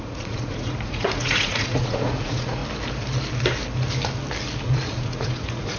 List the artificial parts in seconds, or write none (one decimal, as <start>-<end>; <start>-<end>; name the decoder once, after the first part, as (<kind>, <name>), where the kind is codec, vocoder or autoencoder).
0.0-2.6 (vocoder, Vocos); 4.6-5.8